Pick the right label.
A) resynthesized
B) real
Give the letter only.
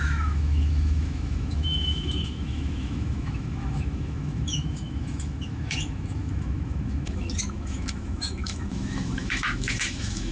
A